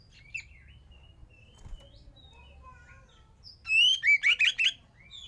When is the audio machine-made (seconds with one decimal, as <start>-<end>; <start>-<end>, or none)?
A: none